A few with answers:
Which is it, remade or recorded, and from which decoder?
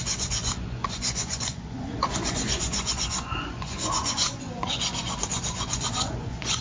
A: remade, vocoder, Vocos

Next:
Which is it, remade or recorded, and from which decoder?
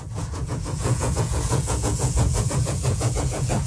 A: remade, vocoder, Vocos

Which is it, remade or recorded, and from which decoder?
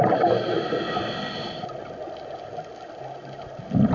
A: recorded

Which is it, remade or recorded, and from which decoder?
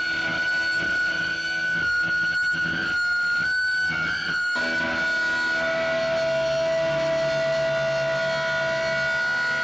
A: recorded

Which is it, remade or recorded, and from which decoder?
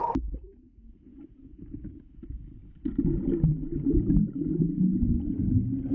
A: recorded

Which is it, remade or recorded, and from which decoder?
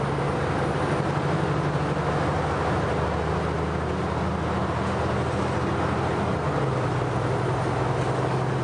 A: recorded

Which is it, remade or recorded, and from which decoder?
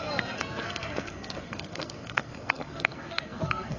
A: remade, codec, SNAC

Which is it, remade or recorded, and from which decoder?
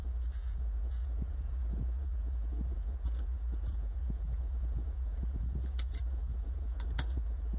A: remade, vocoder, Vocos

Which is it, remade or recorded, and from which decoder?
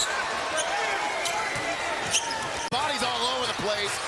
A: recorded